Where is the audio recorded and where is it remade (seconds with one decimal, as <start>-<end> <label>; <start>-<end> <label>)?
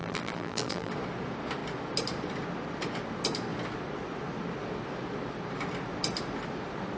0.0-0.9 remade; 0.9-7.0 recorded